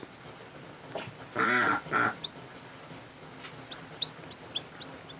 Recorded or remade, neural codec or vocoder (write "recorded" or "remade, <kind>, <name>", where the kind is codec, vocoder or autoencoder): recorded